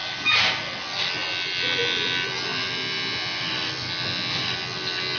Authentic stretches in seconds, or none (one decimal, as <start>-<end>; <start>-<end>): 0.0-5.2